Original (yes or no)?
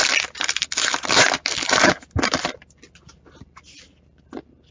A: yes